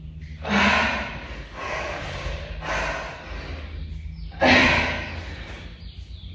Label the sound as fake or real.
real